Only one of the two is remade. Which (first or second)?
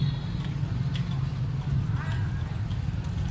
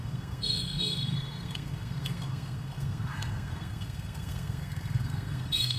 second